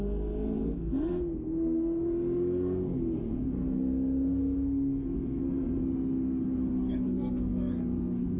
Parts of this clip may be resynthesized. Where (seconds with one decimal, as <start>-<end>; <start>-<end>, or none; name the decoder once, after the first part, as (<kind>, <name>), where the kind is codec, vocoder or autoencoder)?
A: 0.0-8.4 (codec, SNAC)